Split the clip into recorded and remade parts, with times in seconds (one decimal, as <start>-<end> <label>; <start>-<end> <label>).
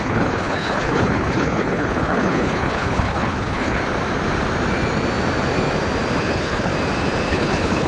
0.0-3.8 remade; 3.8-6.2 recorded; 6.2-6.7 remade; 6.7-7.3 recorded; 7.3-7.9 remade